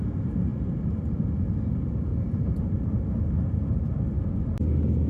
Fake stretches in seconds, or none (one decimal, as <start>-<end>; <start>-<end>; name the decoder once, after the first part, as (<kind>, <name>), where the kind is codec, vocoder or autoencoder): 0.5-1.2 (vocoder, BigVGAN v2); 2.1-3.0